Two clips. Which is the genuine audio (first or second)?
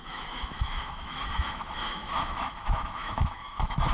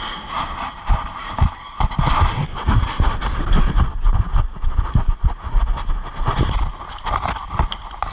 second